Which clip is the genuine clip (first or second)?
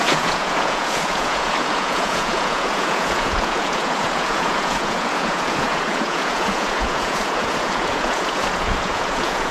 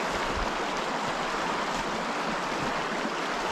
second